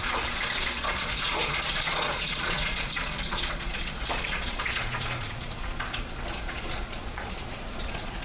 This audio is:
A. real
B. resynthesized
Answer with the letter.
B